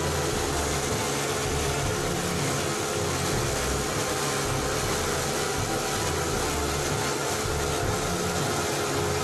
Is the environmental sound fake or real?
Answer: real